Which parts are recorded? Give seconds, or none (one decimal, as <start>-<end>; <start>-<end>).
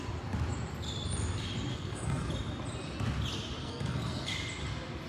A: 0.0-1.7; 2.3-3.6; 4.3-5.1